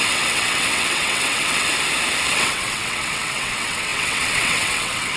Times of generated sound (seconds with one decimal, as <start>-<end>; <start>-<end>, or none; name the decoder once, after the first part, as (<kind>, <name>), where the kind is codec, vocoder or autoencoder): 0.0-1.7 (vocoder, WaveNeXt); 2.3-5.2